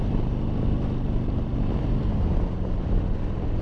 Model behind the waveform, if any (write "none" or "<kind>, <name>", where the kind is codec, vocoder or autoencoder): none